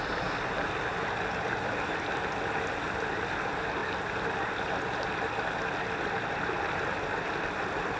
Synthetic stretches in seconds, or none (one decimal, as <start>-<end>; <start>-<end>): none